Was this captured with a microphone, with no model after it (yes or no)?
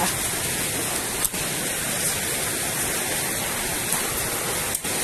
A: yes